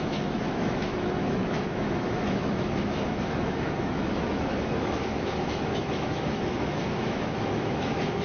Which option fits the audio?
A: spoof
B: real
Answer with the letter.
A